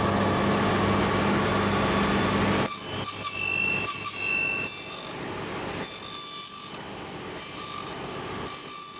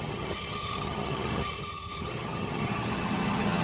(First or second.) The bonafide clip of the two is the first